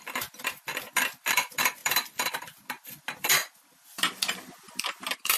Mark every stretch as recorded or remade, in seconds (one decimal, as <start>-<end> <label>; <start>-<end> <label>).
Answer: 0.0-5.4 remade